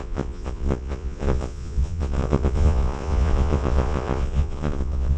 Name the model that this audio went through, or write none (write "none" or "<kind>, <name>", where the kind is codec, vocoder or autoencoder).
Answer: vocoder, Vocos